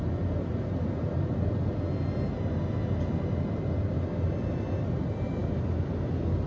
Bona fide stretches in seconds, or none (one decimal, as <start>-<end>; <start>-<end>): 0.0-6.5